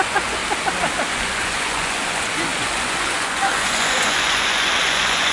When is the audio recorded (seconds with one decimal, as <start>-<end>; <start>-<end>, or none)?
0.4-1.1